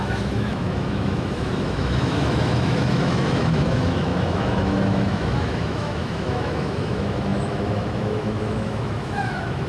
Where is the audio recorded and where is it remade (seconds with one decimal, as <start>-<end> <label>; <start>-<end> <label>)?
0.0-9.7 remade